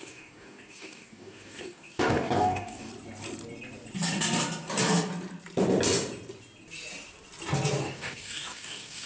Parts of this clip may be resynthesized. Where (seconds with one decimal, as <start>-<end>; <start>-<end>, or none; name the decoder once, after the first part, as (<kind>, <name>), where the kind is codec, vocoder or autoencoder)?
0.0-2.9 (codec, DAC); 7.8-9.1